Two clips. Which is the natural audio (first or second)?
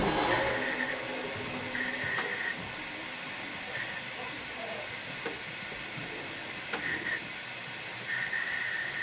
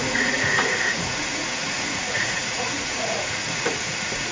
first